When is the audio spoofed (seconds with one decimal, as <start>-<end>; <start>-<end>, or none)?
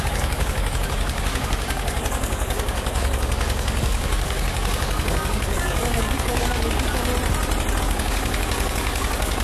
0.0-7.1; 7.8-9.4